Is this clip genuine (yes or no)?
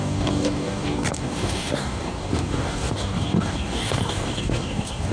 no